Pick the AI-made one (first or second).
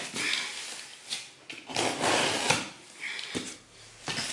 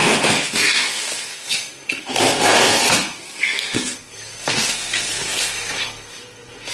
second